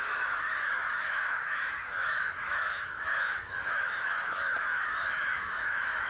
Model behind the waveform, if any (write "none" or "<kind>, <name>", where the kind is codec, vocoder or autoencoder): autoencoder, DAC-VAE